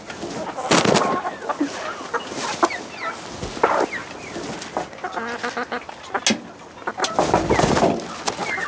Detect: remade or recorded recorded